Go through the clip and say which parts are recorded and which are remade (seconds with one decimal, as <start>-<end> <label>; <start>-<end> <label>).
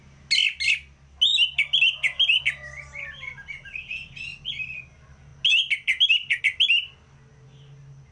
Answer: 0.0-8.1 recorded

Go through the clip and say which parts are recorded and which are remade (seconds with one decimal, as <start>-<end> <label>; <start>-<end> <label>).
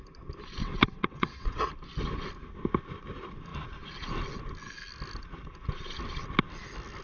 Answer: 0.0-0.6 recorded; 0.6-1.6 remade; 1.6-7.0 recorded